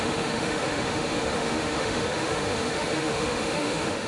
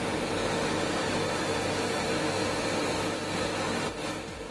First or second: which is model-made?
first